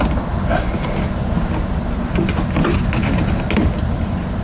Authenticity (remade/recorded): recorded